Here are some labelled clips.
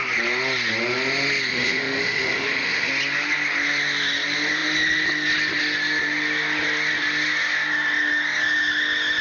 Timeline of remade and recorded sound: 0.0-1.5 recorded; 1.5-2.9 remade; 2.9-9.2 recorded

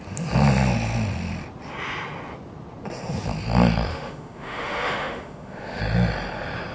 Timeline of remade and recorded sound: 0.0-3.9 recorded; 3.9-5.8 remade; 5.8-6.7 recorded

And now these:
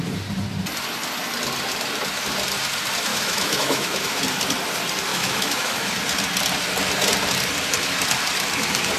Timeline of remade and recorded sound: 0.0-3.1 recorded; 3.1-4.2 remade; 4.2-5.1 recorded; 5.1-5.9 remade; 5.9-9.0 recorded

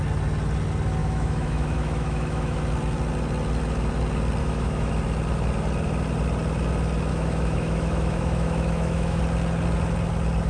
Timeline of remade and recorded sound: 0.0-1.0 recorded; 1.0-2.6 remade; 2.6-4.4 recorded; 4.4-4.9 remade; 4.9-7.1 recorded; 7.1-9.2 remade; 9.2-10.5 recorded

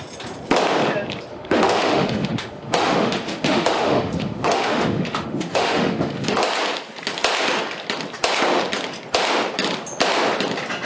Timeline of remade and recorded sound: 0.0-1.3 recorded; 1.3-6.4 remade; 6.4-10.9 recorded